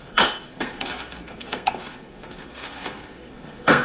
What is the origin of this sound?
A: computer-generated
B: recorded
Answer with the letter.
A